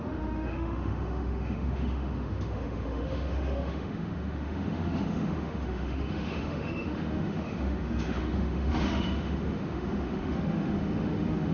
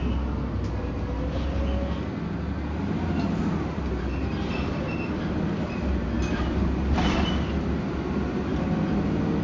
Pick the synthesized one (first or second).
first